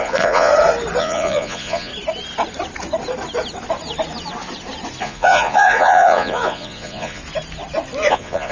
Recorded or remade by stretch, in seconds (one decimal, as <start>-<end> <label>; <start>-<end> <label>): 0.0-0.5 remade; 0.5-1.0 recorded; 1.0-1.9 remade; 1.9-5.0 recorded; 5.0-7.2 remade; 7.2-8.1 recorded; 8.1-8.5 remade